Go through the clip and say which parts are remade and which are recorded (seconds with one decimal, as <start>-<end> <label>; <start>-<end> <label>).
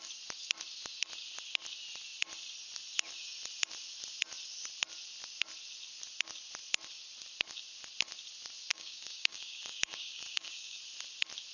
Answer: 0.0-8.7 recorded; 8.7-10.8 remade; 10.8-11.5 recorded